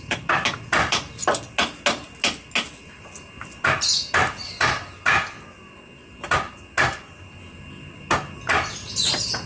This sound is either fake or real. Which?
real